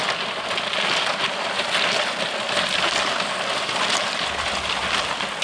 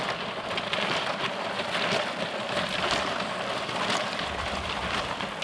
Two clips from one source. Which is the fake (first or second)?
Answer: second